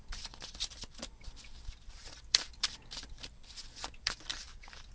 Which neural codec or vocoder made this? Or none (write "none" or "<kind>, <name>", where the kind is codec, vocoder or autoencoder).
vocoder, BigVGAN v2